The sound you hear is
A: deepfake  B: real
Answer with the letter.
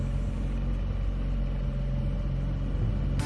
B